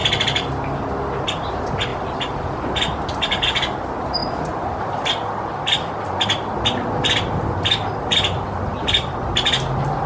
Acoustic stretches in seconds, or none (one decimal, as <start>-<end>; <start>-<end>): 0.0-1.9; 2.5-4.2; 5.1-10.1